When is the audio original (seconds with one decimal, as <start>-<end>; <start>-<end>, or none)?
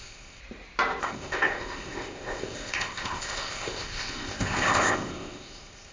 0.4-1.0